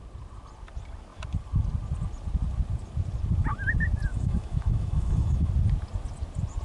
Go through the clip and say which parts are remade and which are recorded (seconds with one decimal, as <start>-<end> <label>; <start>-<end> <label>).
0.0-4.1 recorded; 4.1-5.5 remade; 5.5-6.6 recorded